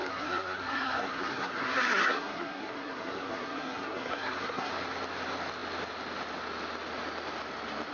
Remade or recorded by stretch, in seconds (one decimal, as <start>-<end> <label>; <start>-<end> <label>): 0.0-4.7 remade; 4.7-7.9 recorded